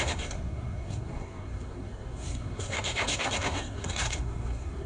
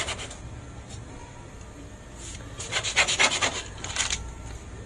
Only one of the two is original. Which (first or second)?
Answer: second